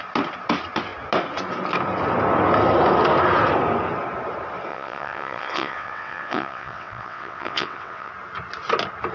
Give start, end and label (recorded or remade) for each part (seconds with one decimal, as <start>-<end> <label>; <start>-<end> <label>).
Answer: 0.0-4.7 recorded; 4.7-8.1 remade; 8.1-9.1 recorded